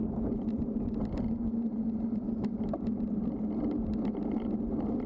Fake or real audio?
real